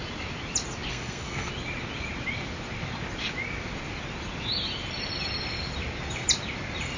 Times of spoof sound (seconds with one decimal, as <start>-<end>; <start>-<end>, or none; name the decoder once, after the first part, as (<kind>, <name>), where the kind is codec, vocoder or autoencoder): 0.9-1.5 (codec, SNAC)